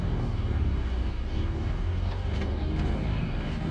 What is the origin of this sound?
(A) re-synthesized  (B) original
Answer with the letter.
A